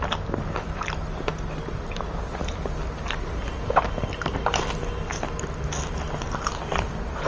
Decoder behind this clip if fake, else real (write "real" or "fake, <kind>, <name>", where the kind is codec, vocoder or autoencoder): real